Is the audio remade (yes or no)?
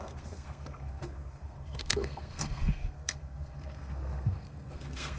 yes